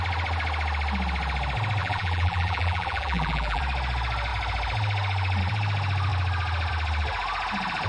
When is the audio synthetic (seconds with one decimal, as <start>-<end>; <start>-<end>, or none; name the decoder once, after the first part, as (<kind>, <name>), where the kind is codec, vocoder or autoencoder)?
1.8-3.6 (vocoder, BigVGAN v2)

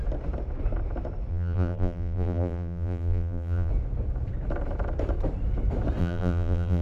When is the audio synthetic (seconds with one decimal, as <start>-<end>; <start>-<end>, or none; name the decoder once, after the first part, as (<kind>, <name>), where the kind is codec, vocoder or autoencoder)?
1.3-3.7 (vocoder, BigVGAN v2); 6.0-6.8

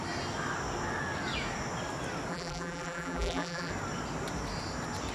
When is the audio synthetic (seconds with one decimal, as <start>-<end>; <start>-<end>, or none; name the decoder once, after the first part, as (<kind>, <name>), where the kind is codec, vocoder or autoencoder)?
2.3-3.7 (vocoder, BigVGAN v2)

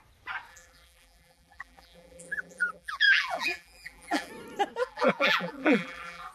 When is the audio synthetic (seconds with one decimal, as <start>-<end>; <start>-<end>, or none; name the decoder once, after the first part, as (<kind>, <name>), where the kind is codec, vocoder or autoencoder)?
0.5-4.3 (vocoder, BigVGAN v2); 4.8-6.3

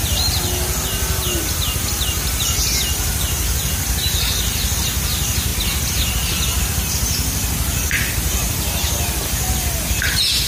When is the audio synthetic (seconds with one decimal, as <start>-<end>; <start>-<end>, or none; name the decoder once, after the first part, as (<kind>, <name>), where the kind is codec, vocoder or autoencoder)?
none